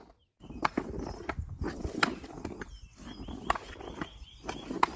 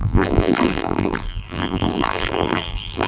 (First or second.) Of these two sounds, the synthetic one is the second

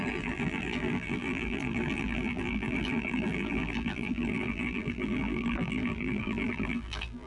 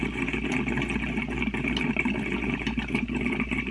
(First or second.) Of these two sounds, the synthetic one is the first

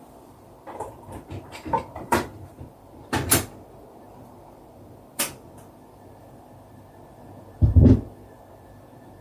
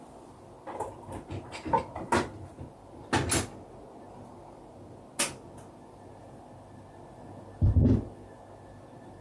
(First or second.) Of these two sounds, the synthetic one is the first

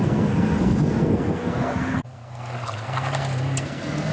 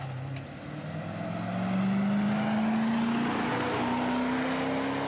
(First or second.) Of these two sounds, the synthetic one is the first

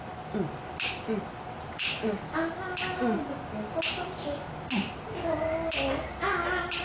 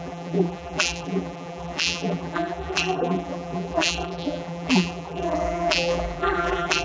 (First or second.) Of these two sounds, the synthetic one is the second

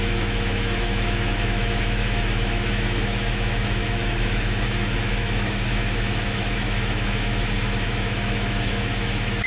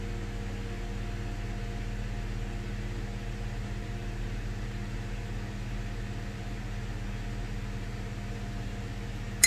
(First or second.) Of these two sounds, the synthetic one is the first